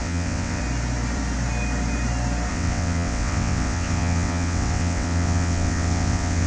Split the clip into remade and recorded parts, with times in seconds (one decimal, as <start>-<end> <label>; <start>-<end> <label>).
0.0-0.6 remade; 0.6-2.5 recorded; 2.5-6.5 remade